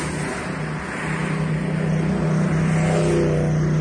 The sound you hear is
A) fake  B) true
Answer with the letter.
B